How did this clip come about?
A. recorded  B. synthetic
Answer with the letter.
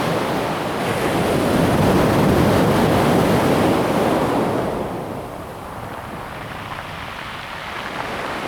A